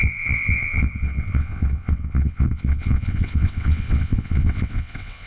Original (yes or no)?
no